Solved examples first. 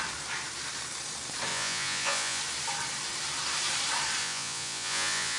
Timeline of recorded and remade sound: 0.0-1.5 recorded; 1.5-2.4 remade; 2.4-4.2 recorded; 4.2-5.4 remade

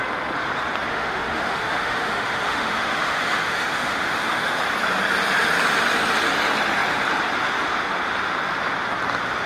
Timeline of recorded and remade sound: 0.0-0.9 recorded; 0.9-4.6 remade; 4.6-9.5 recorded